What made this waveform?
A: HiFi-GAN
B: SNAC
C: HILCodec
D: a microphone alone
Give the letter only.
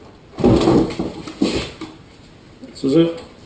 D